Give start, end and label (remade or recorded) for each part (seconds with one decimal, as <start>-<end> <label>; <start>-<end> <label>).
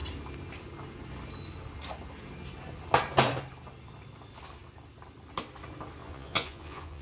0.0-6.0 recorded; 6.0-7.0 remade